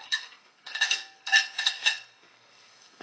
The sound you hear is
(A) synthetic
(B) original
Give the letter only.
A